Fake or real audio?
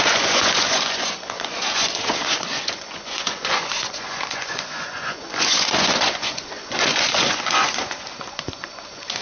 fake